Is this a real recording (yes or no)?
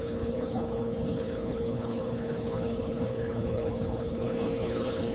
no